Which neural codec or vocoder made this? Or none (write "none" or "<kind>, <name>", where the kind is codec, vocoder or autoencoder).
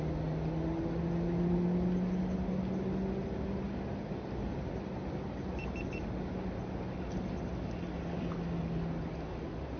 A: none